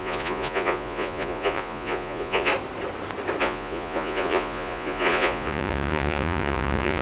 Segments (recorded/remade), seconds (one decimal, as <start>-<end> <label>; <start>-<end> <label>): 0.0-2.5 remade; 2.5-3.4 recorded; 3.4-7.0 remade